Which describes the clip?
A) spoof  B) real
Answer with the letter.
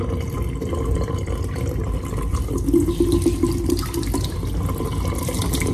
B